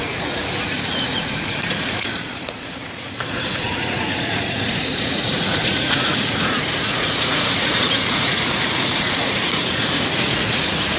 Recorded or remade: remade